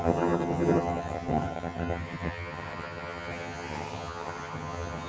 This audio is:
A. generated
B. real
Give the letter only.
A